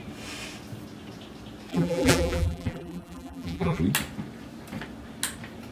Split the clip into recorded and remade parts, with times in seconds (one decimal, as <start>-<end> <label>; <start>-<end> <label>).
0.0-1.7 recorded; 1.7-3.8 remade; 3.8-5.7 recorded